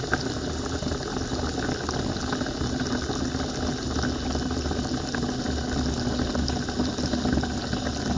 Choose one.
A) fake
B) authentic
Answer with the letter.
B